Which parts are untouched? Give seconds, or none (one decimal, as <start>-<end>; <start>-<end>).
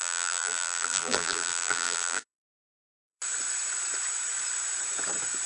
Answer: 3.2-5.5